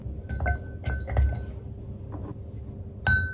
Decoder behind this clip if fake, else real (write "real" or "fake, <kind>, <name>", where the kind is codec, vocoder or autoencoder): real